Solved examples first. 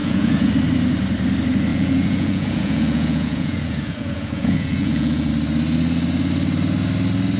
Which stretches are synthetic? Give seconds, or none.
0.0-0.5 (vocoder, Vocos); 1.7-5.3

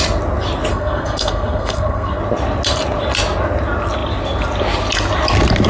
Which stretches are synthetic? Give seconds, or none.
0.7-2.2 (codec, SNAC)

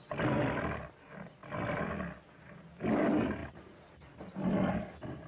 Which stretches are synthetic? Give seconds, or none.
none